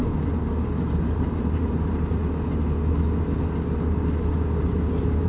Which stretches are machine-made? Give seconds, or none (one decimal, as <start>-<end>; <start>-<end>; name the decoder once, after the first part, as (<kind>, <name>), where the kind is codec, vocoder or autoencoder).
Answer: 0.8-2.2 (vocoder, BigVGAN v2); 4.3-5.3